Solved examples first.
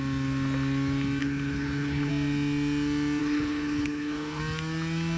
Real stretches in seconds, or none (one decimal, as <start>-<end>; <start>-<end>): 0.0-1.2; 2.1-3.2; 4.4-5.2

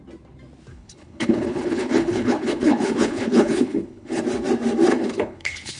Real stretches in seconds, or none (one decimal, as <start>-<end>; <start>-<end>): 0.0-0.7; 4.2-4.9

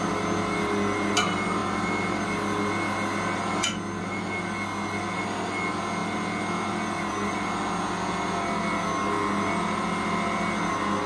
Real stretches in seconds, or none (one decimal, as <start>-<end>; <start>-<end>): 0.0-11.1

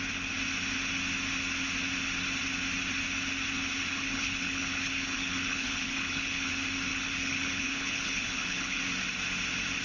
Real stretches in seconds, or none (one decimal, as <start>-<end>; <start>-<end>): 0.0-3.9; 6.5-6.9; 8.8-9.8

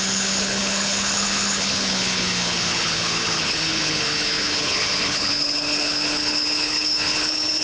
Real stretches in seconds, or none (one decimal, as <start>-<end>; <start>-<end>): none

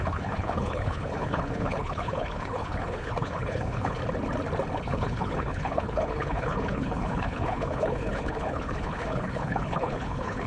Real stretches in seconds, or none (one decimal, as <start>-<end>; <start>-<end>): 4.0-4.8